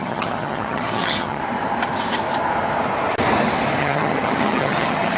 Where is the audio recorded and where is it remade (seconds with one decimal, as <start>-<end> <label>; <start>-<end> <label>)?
0.0-1.4 remade; 1.4-3.8 recorded; 3.8-5.2 remade